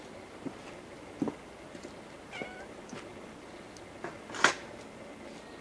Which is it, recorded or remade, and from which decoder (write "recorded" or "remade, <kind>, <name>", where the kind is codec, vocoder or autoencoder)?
recorded